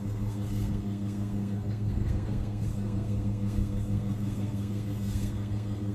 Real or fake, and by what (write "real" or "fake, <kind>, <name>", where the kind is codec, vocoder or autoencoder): fake, codec, SNAC